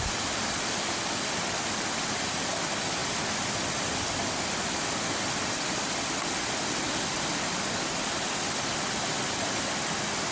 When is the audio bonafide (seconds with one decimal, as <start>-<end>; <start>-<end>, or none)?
0.0-10.3